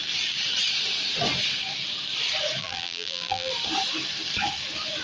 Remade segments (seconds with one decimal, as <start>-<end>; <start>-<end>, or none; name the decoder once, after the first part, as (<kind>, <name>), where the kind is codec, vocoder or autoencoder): 2.6-3.5 (vocoder, BigVGAN v2)